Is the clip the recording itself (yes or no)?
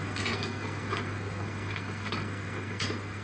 no